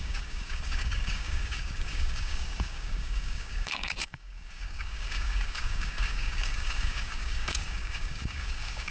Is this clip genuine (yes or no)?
no